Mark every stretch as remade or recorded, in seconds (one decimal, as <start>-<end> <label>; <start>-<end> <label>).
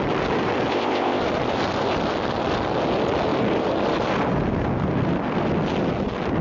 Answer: 0.0-0.7 recorded; 0.7-1.2 remade; 1.2-6.4 recorded